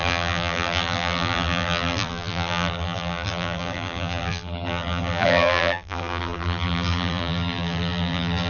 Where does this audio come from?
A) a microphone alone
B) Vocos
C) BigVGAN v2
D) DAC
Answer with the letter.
C